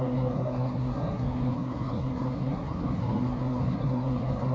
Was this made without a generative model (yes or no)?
no